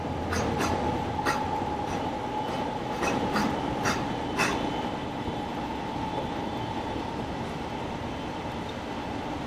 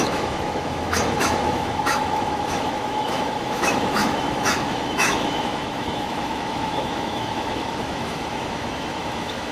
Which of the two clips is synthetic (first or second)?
second